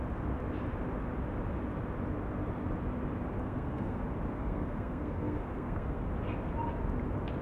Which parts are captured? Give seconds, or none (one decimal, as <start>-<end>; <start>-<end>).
0.0-3.4; 4.0-4.4; 6.1-7.4